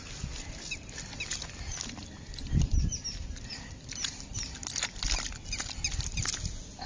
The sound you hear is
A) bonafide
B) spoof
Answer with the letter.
A